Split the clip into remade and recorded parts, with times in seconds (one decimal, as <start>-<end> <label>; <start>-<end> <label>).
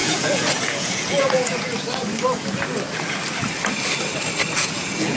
0.0-1.7 remade; 1.7-4.6 recorded; 4.6-5.2 remade